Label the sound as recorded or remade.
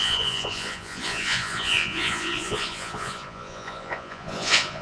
remade